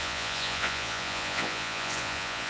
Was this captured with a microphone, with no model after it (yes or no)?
no